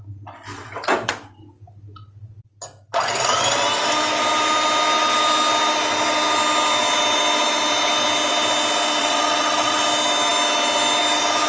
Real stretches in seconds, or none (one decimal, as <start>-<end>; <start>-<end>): 0.0-0.5; 1.1-9.0; 9.8-11.5